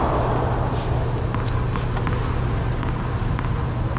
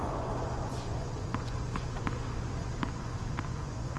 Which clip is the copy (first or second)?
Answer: second